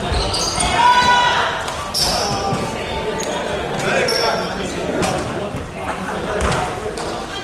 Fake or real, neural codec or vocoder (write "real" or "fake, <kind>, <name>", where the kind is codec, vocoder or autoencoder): real